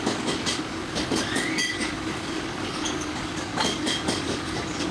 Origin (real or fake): fake